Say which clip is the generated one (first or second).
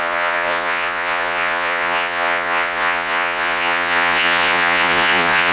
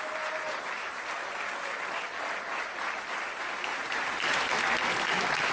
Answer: first